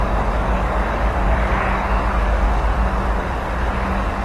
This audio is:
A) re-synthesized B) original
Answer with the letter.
A